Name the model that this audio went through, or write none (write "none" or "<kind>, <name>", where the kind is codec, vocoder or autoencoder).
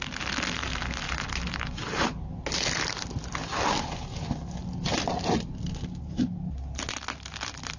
none